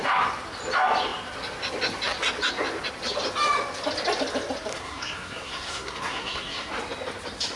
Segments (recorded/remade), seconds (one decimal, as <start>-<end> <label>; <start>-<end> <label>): 0.0-4.7 recorded; 4.7-6.7 remade; 6.7-7.6 recorded